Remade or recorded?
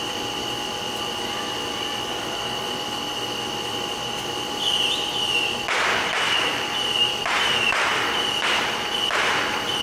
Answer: remade